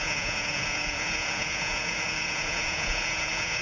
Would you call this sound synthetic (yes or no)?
yes